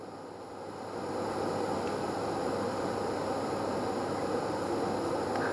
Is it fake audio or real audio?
real